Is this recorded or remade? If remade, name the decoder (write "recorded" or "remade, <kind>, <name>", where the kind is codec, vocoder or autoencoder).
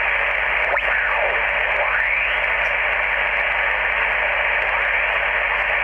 recorded